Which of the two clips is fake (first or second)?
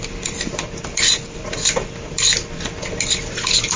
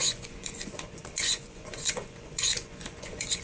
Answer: second